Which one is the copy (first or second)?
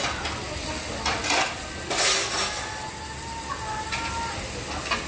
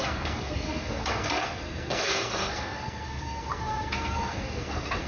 second